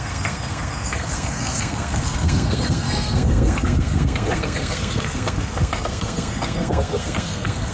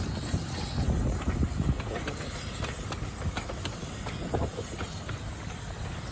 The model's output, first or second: first